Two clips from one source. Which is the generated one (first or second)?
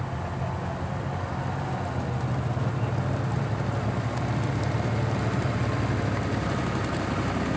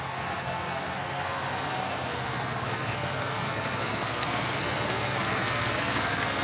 second